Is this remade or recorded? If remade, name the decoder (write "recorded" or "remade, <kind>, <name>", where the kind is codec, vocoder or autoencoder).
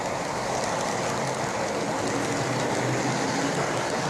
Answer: recorded